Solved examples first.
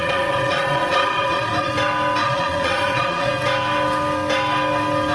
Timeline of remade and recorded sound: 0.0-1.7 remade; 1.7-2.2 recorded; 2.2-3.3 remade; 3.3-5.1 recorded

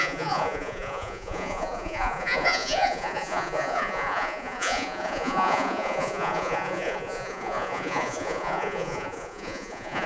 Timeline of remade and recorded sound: 0.0-10.1 remade

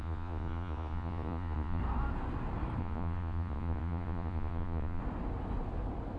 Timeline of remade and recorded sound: 0.0-1.8 remade; 1.8-2.8 recorded; 2.8-5.0 remade; 5.0-6.2 recorded

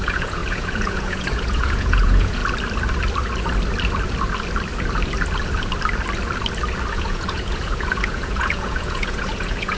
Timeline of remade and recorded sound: 0.0-2.4 remade; 2.4-6.9 recorded; 6.9-9.8 remade

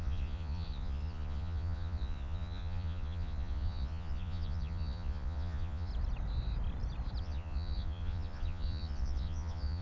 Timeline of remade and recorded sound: 0.0-5.9 remade; 5.9-7.2 recorded; 7.2-9.8 remade

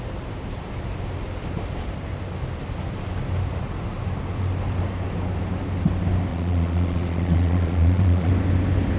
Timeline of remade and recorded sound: 0.0-6.3 recorded; 6.3-8.3 remade; 8.3-9.0 recorded

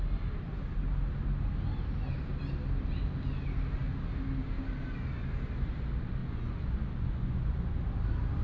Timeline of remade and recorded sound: 0.0-6.2 recorded; 6.2-7.8 remade; 7.8-8.4 recorded

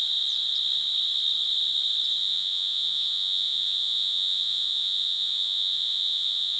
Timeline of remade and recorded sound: 0.0-2.2 recorded; 2.2-6.6 remade